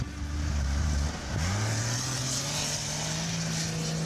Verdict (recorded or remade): recorded